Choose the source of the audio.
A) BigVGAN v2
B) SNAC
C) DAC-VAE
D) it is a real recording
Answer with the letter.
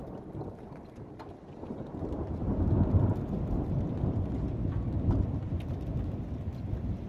D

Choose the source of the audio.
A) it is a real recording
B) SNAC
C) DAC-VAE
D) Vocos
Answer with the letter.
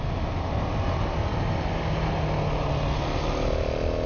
A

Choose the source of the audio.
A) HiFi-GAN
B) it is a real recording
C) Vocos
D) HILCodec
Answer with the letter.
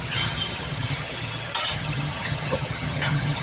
A